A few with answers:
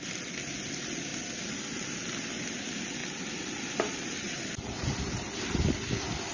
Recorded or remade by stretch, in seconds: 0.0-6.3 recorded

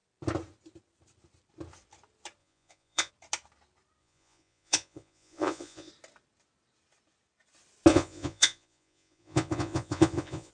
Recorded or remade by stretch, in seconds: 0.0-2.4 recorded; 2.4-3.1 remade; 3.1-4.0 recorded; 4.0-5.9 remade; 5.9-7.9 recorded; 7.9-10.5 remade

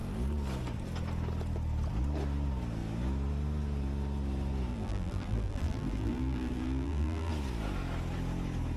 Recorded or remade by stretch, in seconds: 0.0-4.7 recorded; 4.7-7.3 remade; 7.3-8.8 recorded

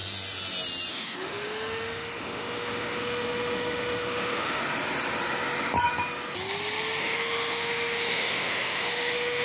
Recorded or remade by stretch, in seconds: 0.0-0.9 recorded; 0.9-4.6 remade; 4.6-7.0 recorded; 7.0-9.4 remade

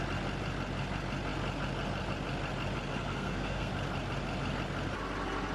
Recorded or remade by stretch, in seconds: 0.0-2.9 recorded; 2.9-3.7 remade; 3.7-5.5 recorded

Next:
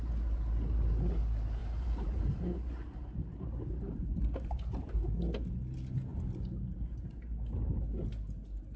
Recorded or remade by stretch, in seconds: 0.0-1.6 recorded; 1.6-4.9 remade; 4.9-8.8 recorded